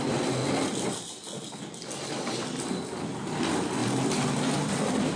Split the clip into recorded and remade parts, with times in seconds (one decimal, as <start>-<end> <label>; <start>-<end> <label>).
0.0-5.2 recorded